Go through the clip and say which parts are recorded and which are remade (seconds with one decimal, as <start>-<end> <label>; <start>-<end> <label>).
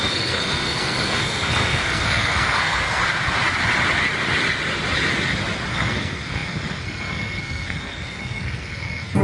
0.0-3.0 remade; 3.0-5.7 recorded; 5.7-9.2 remade